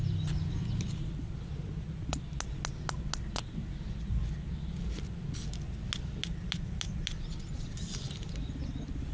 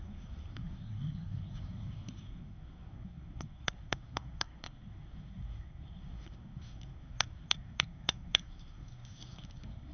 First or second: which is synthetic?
second